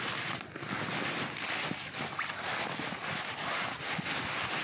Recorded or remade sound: recorded